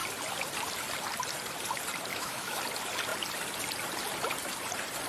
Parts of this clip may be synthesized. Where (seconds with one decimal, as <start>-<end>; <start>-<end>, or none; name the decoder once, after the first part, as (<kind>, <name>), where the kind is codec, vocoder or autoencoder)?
2.1-2.6 (autoencoder, DAC-VAE)